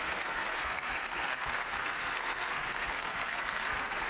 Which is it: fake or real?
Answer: fake